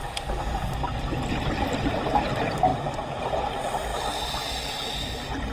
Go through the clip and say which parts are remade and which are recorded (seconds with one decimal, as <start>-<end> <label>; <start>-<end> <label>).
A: 0.0-5.5 recorded